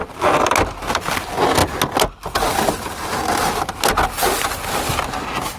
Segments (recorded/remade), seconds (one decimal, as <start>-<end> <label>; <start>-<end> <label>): 0.0-5.6 recorded